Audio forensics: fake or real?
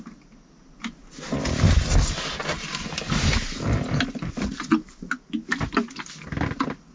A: real